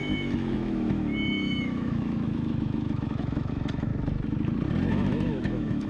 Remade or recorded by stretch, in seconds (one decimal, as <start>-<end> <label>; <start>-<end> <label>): 0.0-3.9 remade; 3.9-4.9 recorded; 4.9-5.9 remade